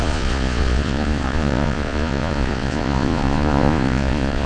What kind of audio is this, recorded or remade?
remade